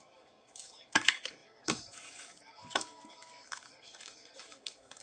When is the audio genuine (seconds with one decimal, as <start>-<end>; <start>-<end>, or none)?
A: none